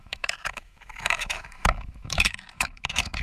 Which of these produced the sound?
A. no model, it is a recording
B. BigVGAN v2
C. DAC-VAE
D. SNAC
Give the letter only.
C